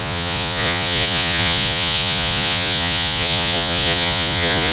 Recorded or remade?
remade